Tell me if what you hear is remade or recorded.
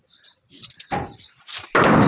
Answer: recorded